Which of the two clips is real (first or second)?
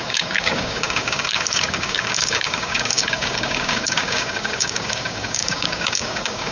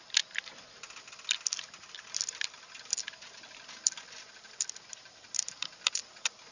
second